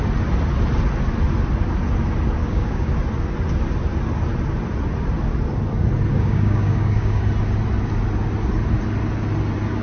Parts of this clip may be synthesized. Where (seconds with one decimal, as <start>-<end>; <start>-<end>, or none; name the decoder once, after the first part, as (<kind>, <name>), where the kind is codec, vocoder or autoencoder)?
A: 2.4-2.9 (codec, DAC); 6.1-7.2